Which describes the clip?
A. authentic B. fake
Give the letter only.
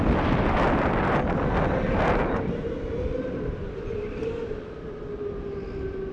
A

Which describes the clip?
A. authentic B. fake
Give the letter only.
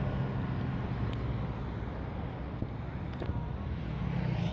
A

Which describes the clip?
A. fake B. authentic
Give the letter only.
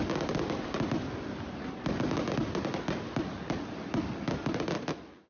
B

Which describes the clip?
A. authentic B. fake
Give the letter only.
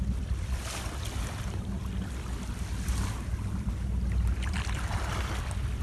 B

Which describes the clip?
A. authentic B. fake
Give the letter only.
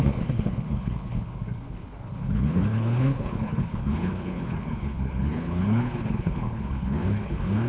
B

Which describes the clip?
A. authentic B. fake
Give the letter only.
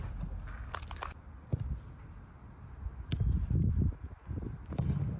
A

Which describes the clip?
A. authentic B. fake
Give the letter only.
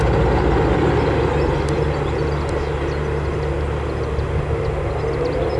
A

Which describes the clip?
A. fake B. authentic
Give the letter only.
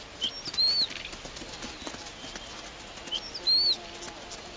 B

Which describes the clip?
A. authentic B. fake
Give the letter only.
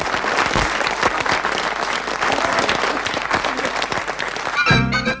A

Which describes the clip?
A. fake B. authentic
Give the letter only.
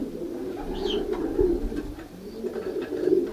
B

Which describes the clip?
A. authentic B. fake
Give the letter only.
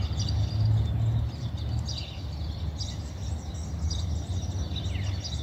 A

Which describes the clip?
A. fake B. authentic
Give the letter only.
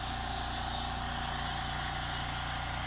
B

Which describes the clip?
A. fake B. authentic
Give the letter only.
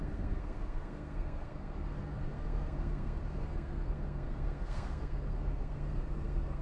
A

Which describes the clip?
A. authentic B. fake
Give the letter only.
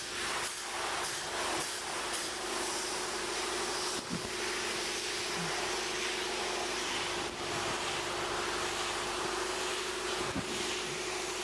A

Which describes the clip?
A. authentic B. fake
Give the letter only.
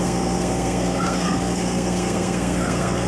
B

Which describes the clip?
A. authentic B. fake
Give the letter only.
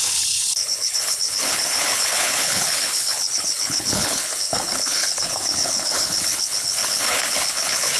B